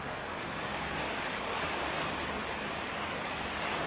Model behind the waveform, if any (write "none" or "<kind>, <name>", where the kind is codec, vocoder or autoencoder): codec, DAC